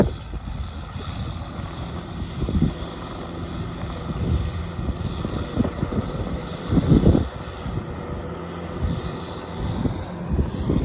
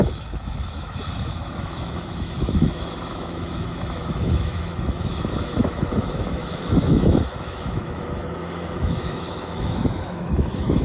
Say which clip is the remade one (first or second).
second